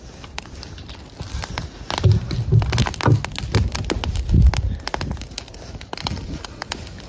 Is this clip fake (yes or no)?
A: no